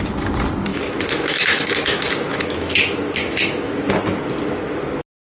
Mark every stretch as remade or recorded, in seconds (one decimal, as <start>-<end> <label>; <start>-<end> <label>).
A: 0.0-0.7 recorded; 0.7-3.9 remade; 3.9-5.3 recorded